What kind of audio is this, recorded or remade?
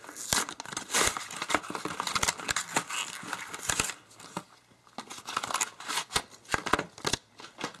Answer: recorded